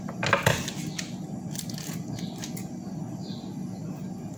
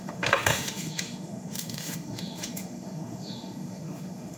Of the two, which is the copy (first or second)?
second